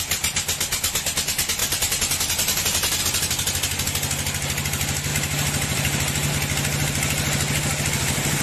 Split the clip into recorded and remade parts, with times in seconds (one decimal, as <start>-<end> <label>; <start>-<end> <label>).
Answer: 0.0-1.6 recorded; 1.6-3.0 remade; 3.0-5.1 recorded; 5.1-6.3 remade; 6.3-8.4 recorded